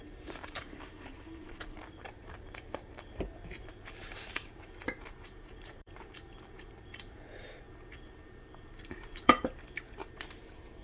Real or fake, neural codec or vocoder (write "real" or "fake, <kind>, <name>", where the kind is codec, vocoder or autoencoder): fake, vocoder, BigVGAN v2